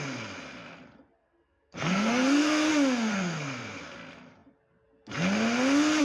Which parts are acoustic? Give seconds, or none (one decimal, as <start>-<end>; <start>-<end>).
0.0-1.2; 2.7-3.1; 3.8-6.0